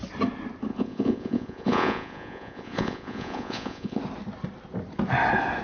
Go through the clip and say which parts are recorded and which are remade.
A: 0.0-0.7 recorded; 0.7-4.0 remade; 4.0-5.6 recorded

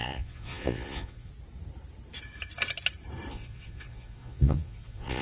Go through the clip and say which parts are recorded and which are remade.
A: 0.0-1.3 remade; 1.3-3.3 recorded; 3.3-5.2 remade